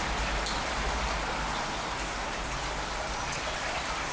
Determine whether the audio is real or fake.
real